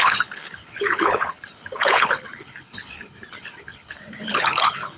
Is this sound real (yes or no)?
no